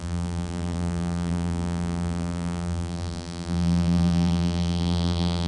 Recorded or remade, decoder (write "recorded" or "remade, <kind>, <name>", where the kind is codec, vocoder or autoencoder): remade, vocoder, BigVGAN v2